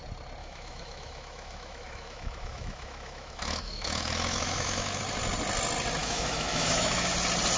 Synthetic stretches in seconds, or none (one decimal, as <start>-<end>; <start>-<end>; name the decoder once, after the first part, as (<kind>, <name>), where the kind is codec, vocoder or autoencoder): 0.4-5.0 (autoencoder, DAC-VAE); 6.0-7.1